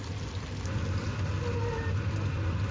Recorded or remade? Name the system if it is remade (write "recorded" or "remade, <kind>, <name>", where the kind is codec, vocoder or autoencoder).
recorded